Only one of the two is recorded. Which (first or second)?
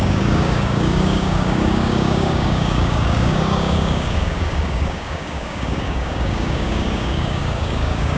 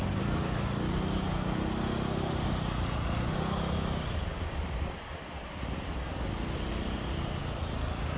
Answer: second